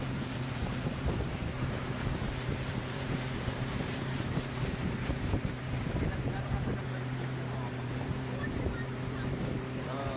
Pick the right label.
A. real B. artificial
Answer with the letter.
B